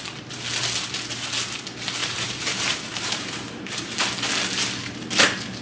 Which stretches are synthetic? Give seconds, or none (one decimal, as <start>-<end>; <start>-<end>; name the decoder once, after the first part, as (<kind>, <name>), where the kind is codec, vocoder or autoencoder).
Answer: 2.0-4.0 (vocoder, BigVGAN v2)